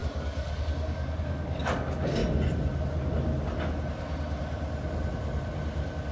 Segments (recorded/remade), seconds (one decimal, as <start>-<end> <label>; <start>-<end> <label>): 0.0-2.2 remade; 2.2-6.1 recorded

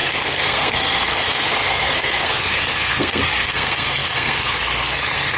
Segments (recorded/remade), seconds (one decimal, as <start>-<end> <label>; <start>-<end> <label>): 0.0-5.4 remade

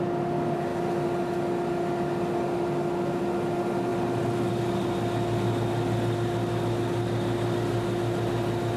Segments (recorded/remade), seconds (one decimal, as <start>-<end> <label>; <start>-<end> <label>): 0.0-8.8 recorded

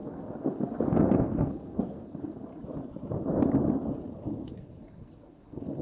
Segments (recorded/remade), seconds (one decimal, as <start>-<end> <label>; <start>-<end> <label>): 0.0-2.5 remade; 2.5-4.3 recorded; 4.3-5.8 remade